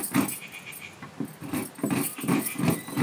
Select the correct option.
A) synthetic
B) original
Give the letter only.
B